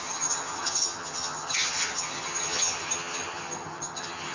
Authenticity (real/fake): fake